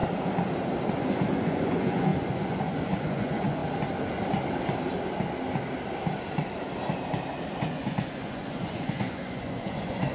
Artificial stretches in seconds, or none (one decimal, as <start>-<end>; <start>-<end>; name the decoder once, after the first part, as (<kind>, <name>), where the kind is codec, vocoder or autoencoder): 1.0-3.6 (vocoder, Vocos); 7.6-10.1